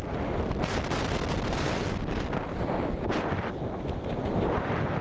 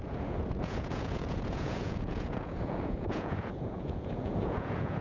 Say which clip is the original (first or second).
first